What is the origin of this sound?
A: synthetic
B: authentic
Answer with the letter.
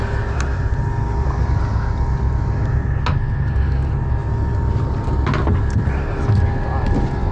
B